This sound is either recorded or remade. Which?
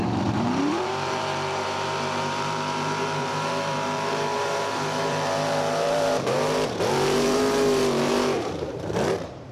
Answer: remade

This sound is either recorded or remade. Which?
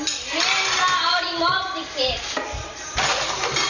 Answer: recorded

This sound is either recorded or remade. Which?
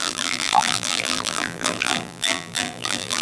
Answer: remade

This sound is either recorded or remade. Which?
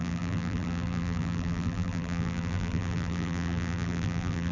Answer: remade